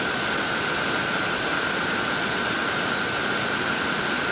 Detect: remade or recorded remade